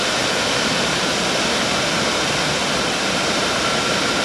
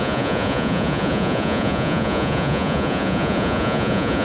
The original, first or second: first